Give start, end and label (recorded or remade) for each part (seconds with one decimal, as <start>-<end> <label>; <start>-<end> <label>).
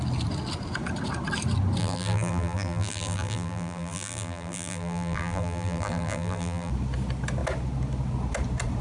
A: 0.0-1.8 recorded; 1.8-6.7 remade; 6.7-8.8 recorded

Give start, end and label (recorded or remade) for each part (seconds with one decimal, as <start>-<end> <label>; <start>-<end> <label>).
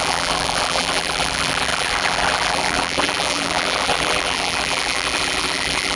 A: 0.0-6.0 remade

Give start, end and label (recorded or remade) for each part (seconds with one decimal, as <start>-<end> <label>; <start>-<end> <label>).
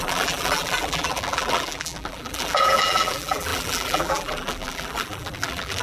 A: 0.0-5.8 remade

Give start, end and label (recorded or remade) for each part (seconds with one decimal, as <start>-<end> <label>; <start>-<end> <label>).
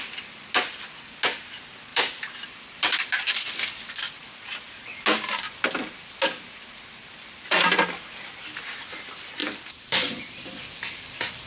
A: 0.0-1.9 recorded; 1.9-4.1 remade; 4.1-9.4 recorded; 9.4-10.2 remade; 10.2-11.5 recorded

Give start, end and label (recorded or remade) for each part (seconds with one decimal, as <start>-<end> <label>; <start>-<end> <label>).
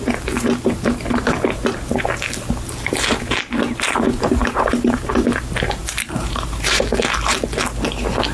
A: 0.0-4.4 recorded; 4.4-5.1 remade; 5.1-5.8 recorded; 5.8-6.8 remade; 6.8-8.3 recorded